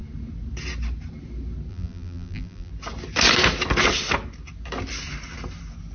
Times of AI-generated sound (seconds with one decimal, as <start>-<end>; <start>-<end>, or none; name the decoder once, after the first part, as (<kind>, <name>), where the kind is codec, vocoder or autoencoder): 1.7-2.7 (vocoder, BigVGAN v2)